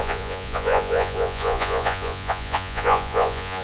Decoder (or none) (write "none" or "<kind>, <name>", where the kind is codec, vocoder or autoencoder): vocoder, Vocos